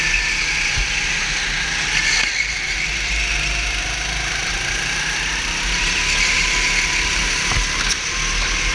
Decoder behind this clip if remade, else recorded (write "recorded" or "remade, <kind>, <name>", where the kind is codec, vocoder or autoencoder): recorded